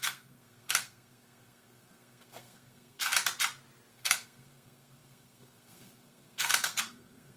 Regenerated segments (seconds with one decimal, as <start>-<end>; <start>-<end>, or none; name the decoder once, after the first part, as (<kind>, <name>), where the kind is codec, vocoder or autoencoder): 0.0-3.1 (codec, SNAC); 3.9-7.4